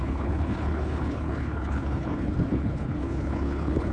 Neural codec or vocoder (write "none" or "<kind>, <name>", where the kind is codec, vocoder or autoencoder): codec, HILCodec